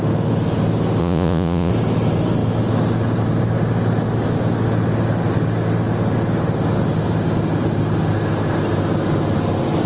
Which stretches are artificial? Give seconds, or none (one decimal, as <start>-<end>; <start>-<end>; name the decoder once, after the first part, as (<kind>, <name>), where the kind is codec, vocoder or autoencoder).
1.0-1.7 (vocoder, Vocos)